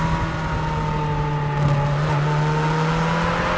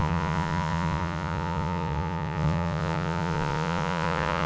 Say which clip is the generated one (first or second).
second